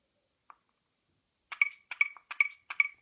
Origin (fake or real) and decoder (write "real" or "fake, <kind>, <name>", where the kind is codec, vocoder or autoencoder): real